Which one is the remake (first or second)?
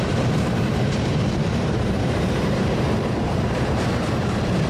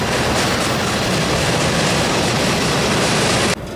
first